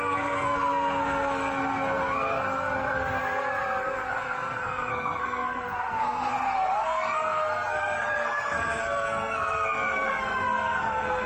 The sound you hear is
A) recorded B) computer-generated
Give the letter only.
B